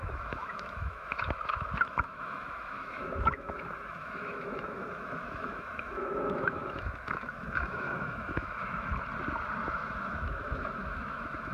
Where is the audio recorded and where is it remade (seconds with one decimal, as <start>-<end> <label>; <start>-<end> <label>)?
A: 0.0-8.9 remade; 8.9-9.6 recorded; 9.6-11.5 remade